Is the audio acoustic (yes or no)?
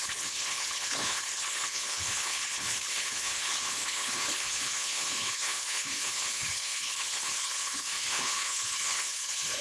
no